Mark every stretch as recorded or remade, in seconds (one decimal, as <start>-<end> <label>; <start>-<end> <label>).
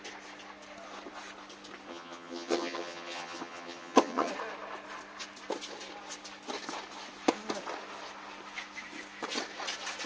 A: 0.0-1.9 recorded; 1.9-4.3 remade; 4.3-10.1 recorded